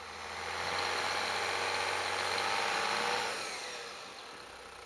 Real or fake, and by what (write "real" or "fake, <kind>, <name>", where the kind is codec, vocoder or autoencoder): real